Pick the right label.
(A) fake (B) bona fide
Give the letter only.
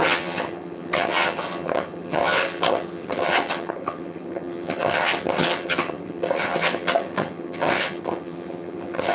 A